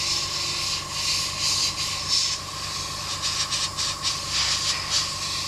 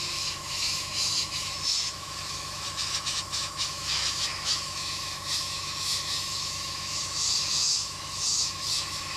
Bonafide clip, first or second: first